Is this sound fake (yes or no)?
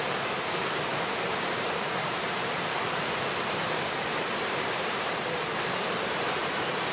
yes